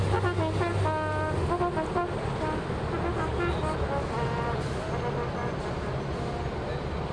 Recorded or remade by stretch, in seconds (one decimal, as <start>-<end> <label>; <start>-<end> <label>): 0.0-7.1 recorded